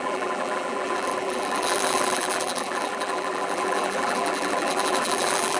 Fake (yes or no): yes